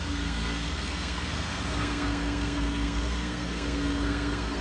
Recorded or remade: remade